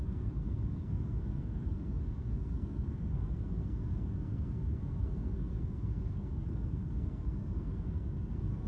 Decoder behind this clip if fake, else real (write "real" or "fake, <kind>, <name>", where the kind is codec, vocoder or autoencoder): fake, codec, SNAC